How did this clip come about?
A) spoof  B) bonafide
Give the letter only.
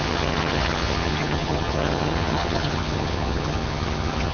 A